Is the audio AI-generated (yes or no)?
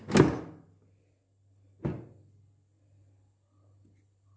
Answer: no